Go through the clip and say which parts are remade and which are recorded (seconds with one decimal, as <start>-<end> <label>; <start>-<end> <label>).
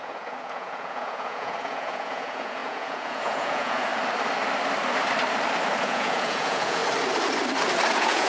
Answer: 0.0-3.9 remade; 3.9-5.8 recorded; 5.8-6.8 remade; 6.8-7.9 recorded; 7.9-8.3 remade